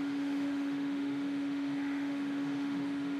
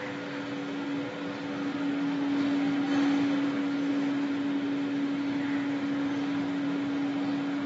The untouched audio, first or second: second